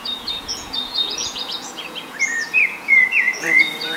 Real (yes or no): no